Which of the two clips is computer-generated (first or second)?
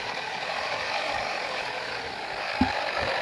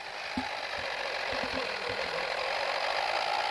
first